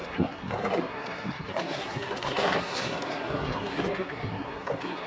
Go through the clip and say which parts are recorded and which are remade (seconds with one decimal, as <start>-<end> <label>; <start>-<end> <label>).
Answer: 0.0-5.1 remade